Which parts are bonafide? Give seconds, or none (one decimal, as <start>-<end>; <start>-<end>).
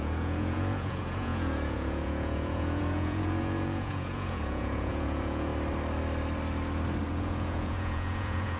5.5-7.1